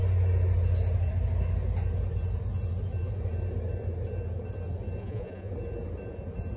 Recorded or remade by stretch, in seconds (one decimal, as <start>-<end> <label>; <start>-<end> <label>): 0.0-5.0 recorded; 5.0-5.5 remade; 5.5-6.6 recorded